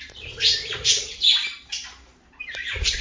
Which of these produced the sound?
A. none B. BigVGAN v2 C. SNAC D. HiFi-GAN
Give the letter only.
B